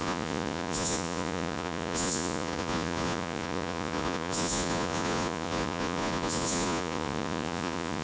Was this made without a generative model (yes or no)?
no